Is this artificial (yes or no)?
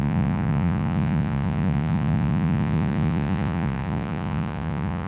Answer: yes